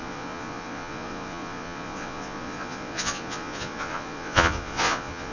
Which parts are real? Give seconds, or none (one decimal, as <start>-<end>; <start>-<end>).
none